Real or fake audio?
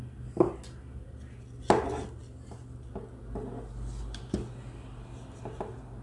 real